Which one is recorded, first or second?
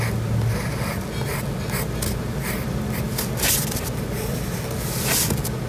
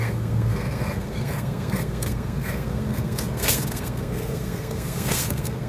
first